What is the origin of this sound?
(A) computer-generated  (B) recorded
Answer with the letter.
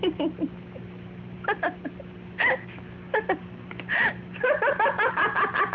B